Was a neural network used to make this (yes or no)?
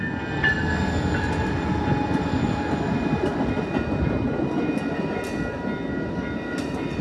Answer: no